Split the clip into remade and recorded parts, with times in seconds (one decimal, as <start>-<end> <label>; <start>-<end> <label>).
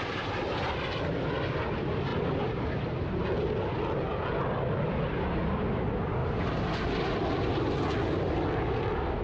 0.0-9.2 recorded